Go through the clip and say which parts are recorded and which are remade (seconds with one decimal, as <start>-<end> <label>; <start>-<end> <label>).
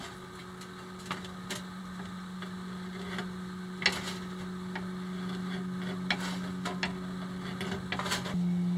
0.0-8.8 recorded